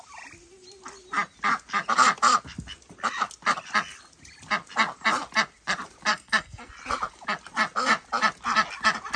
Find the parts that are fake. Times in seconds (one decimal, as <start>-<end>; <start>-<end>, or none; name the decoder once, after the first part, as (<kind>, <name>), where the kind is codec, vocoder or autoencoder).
6.1-6.7 (codec, SNAC)